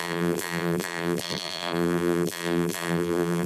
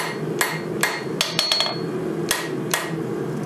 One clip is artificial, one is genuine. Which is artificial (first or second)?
first